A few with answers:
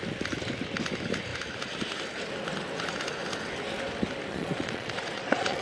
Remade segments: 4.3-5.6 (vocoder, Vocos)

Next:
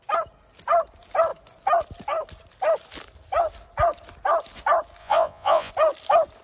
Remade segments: 5.0-5.7 (vocoder, Vocos)

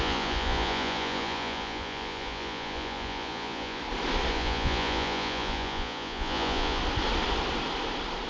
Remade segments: 0.0-3.8 (vocoder, Vocos); 4.3-6.8

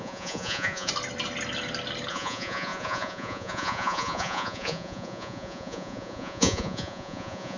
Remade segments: 0.0-0.9 (vocoder, Vocos); 2.1-7.6

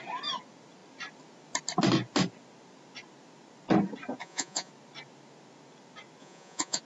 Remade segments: 4.2-4.7 (vocoder, Vocos); 6.2-6.8